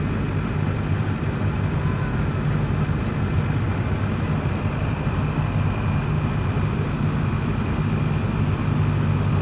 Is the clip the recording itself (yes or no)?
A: yes